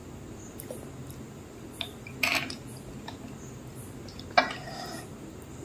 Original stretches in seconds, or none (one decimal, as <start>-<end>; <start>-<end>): 0.0-5.6